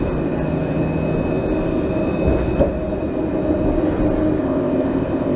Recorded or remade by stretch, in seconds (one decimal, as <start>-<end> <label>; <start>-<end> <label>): 0.0-4.4 recorded; 4.4-5.4 remade